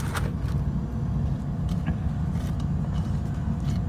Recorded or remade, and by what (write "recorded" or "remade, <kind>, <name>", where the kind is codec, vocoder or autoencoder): recorded